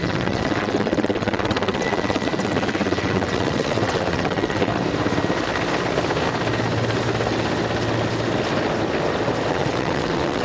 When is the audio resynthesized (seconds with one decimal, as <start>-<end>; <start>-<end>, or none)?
0.0-4.7; 9.5-10.4